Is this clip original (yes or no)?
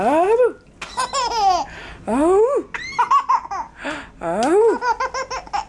yes